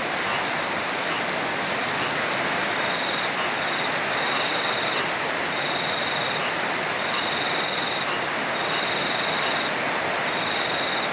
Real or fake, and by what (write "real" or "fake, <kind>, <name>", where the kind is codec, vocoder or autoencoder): real